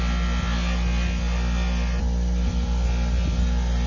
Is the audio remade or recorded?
recorded